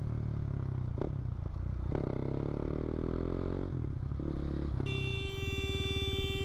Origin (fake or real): real